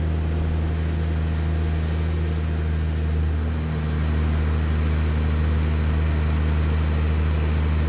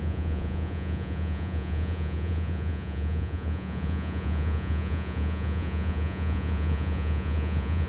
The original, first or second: first